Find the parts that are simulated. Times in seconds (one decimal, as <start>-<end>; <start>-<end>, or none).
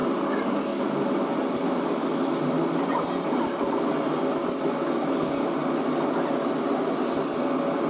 none